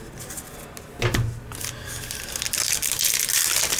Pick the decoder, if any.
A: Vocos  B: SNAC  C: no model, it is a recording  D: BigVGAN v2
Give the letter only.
C